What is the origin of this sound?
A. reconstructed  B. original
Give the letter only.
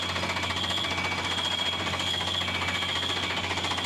B